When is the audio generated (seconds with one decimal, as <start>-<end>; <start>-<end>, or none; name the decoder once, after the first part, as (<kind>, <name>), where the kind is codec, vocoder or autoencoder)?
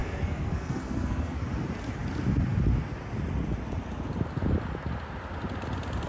0.0-1.4 (codec, SNAC)